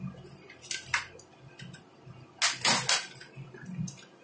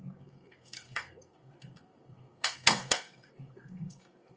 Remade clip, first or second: second